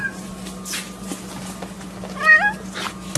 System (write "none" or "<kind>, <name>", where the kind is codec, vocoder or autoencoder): none